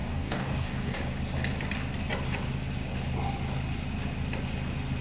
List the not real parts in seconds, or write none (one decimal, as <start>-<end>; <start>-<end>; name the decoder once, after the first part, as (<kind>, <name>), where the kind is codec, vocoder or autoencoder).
0.0-1.0 (codec, DAC)